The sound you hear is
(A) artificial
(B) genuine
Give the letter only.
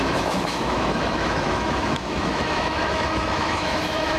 A